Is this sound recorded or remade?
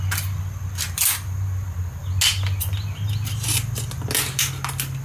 recorded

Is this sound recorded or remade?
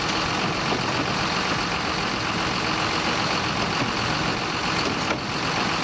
recorded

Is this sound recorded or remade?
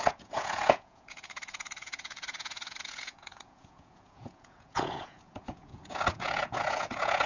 remade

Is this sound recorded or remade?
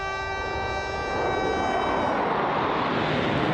recorded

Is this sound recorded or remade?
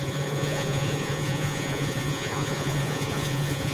remade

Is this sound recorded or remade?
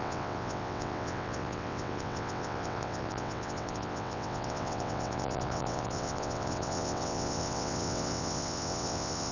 remade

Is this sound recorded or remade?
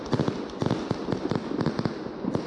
recorded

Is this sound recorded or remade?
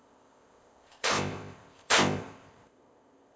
remade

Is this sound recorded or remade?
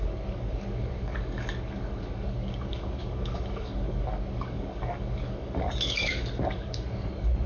remade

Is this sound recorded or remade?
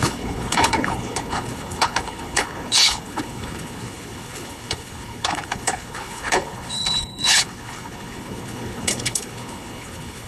remade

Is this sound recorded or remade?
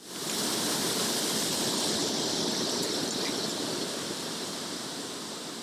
recorded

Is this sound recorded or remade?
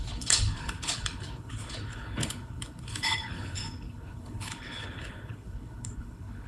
remade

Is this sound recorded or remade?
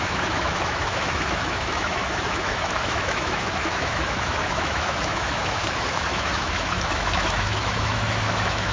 remade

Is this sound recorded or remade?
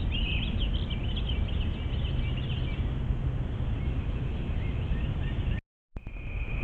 recorded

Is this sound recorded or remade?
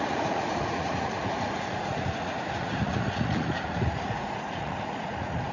remade